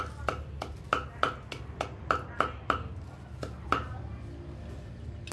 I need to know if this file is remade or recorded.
recorded